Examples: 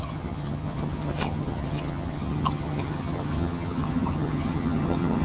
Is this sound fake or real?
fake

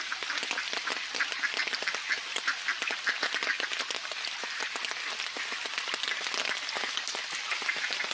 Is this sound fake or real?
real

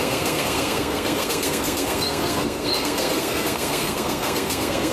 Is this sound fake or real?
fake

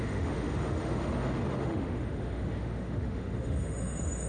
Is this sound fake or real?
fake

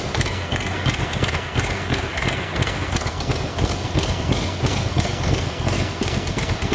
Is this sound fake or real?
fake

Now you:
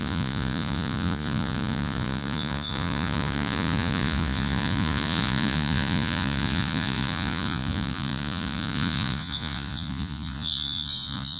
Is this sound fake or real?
fake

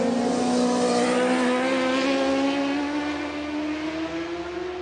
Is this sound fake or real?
real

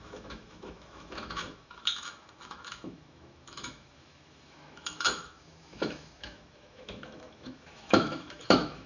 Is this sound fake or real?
fake